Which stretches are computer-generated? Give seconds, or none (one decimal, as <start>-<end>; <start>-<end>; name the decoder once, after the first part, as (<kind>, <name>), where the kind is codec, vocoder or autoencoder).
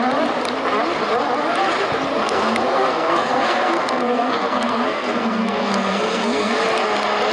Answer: 2.2-6.6 (codec, SNAC)